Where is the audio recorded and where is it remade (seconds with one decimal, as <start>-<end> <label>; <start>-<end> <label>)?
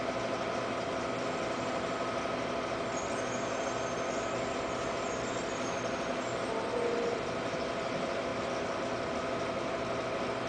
0.0-10.5 recorded